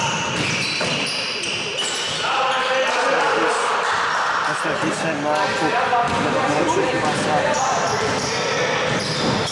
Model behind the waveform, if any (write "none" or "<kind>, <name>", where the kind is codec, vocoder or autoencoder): none